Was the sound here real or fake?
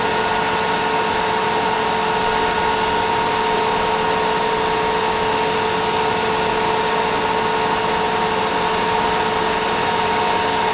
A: real